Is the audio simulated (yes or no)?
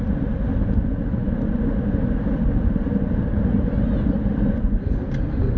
no